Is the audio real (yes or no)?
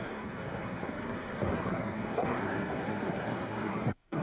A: no